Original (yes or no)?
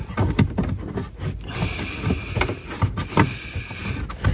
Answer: yes